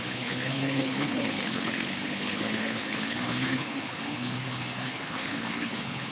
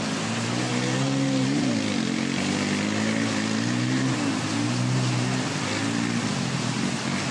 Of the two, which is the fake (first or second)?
first